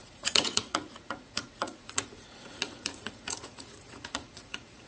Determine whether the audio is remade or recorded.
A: remade